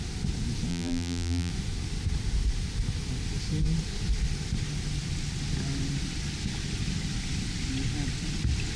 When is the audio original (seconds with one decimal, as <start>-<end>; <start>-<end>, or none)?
0.0-0.7; 1.5-8.8